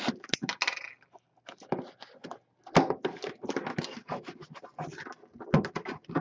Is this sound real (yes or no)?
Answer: yes